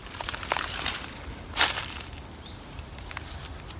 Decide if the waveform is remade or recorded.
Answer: remade